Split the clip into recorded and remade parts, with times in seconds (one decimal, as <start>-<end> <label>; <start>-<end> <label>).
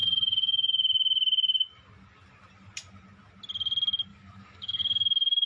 0.0-4.1 recorded; 4.1-5.5 remade